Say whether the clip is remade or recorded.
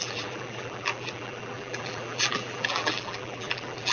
remade